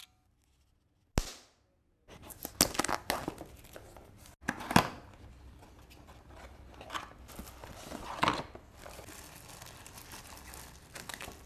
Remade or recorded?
recorded